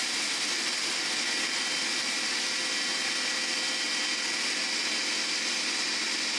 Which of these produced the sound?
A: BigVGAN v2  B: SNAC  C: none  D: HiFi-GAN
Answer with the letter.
C